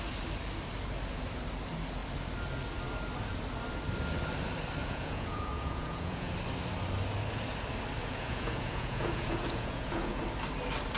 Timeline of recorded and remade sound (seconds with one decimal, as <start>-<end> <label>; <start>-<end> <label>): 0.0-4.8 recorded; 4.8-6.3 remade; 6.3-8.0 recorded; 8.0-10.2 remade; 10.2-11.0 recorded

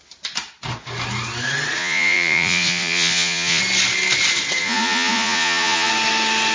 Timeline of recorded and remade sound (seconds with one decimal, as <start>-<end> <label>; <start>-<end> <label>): 0.0-1.8 recorded; 1.8-3.6 remade; 3.6-4.6 recorded; 4.6-5.9 remade; 5.9-6.5 recorded

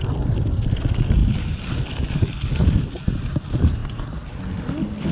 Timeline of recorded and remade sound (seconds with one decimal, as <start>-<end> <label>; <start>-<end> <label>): 0.0-5.1 recorded

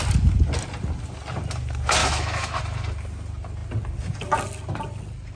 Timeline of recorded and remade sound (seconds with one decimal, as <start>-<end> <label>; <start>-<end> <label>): 0.0-2.0 recorded; 2.0-2.6 remade; 2.6-5.3 recorded

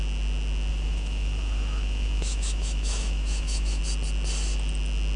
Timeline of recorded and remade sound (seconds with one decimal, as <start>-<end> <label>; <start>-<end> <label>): 0.0-0.7 recorded; 0.7-3.8 remade; 3.8-5.2 recorded

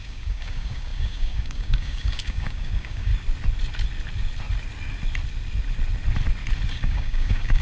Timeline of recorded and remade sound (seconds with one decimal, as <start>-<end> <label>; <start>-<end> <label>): 0.0-3.1 remade; 3.1-6.7 recorded; 6.7-7.6 remade